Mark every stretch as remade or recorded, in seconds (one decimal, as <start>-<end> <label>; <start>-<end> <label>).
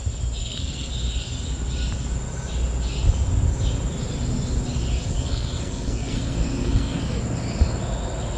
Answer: 0.0-0.4 recorded; 0.4-0.9 remade; 0.9-5.1 recorded; 5.1-7.2 remade; 7.2-8.4 recorded